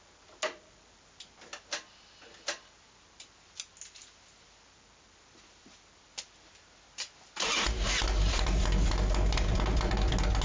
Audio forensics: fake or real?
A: real